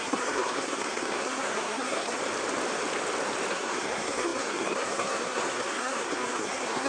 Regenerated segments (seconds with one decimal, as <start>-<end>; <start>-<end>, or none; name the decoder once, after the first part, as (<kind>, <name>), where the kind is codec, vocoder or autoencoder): 0.0-2.2 (codec, SNAC); 3.5-6.9